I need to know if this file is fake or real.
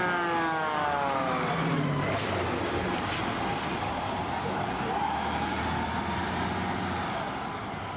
real